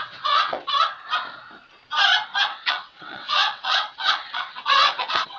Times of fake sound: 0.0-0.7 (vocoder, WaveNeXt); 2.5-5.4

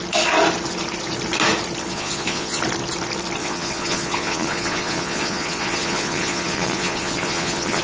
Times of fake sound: 1.9-2.6 (vocoder, Vocos); 3.4-7.8